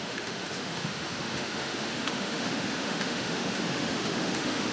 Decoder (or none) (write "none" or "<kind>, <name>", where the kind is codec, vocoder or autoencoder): autoencoder, DAC-VAE